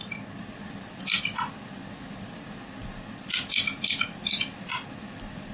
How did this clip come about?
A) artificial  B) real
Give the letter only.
A